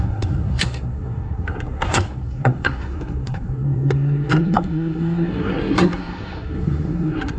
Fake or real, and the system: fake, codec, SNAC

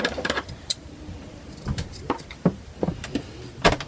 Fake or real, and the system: real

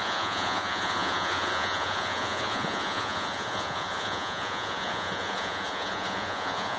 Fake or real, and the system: fake, vocoder, Vocos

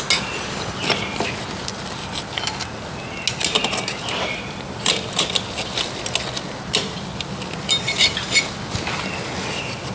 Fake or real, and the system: real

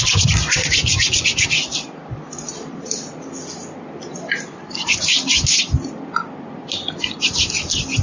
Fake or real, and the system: real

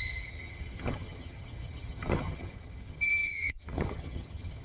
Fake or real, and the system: fake, vocoder, HiFi-GAN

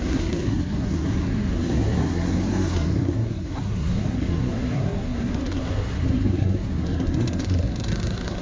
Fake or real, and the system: fake, codec, SNAC